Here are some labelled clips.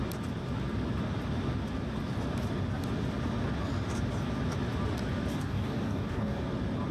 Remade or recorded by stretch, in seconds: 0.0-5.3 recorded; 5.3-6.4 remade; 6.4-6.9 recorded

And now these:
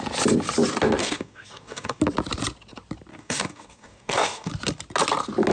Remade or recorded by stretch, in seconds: 0.0-1.0 recorded; 1.0-2.0 remade; 2.0-3.1 recorded; 3.1-4.5 remade; 4.5-5.5 recorded

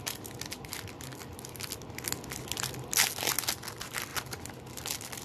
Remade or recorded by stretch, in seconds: 0.0-5.2 recorded